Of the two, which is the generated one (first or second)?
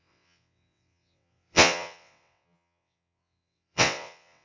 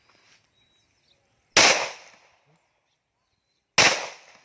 first